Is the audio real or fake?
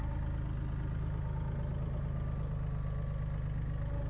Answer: real